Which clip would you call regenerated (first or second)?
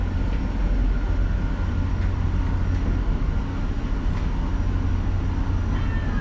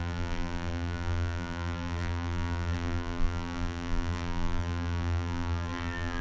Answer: second